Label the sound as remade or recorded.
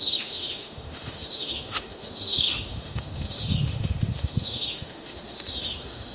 remade